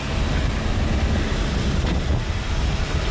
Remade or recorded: recorded